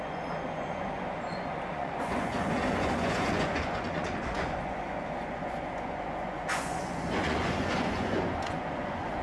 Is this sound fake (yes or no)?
yes